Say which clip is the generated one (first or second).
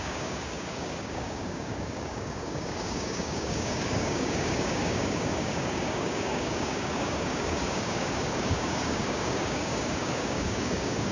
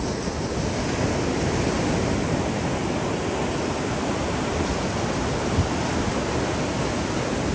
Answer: first